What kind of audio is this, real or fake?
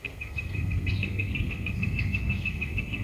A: fake